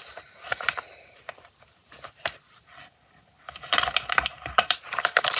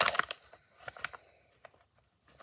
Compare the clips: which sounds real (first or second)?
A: second